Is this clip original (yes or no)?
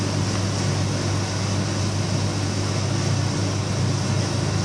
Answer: yes